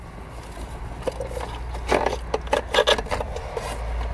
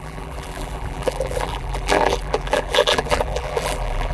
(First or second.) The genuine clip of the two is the first